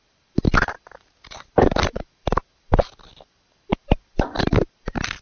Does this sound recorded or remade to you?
recorded